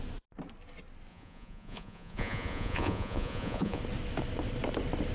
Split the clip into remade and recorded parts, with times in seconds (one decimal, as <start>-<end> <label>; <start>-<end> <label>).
0.0-1.1 recorded; 1.1-3.8 remade; 3.8-5.1 recorded